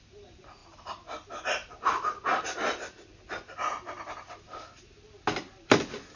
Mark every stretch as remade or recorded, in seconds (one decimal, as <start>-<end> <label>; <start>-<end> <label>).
0.0-6.2 recorded